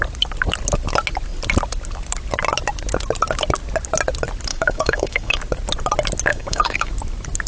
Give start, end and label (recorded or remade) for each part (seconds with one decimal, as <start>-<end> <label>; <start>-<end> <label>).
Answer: 0.0-4.5 recorded; 4.5-5.4 remade; 5.4-6.3 recorded; 6.3-6.9 remade; 6.9-7.5 recorded